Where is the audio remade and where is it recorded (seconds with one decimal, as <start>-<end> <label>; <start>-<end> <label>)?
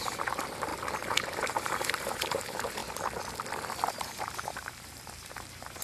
0.0-2.8 remade; 2.8-3.9 recorded; 3.9-5.8 remade